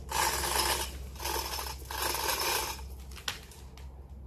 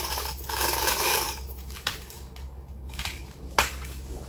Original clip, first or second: first